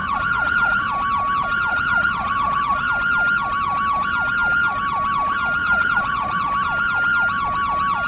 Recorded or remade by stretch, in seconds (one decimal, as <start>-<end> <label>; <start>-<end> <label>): 0.0-0.9 remade; 0.9-1.7 recorded; 1.7-2.9 remade; 2.9-5.6 recorded; 5.6-6.5 remade; 6.5-8.1 recorded